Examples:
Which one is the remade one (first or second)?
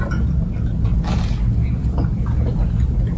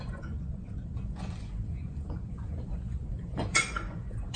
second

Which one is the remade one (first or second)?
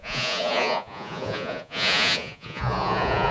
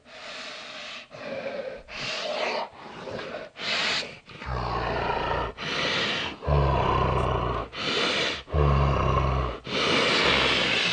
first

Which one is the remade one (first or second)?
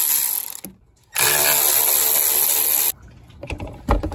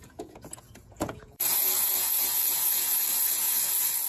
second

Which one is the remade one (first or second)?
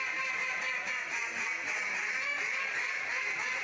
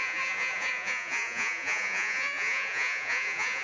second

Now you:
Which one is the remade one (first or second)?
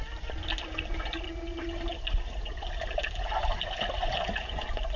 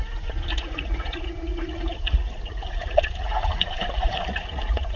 second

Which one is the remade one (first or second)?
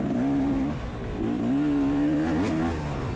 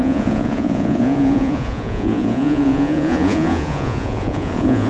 second